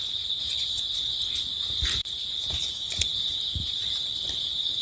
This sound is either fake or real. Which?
real